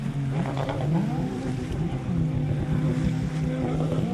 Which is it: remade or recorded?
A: recorded